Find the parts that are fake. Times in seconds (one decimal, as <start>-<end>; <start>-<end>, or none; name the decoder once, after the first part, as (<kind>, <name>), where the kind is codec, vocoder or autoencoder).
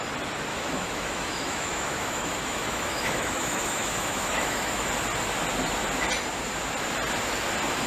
0.5-4.9 (autoencoder, DAC-VAE)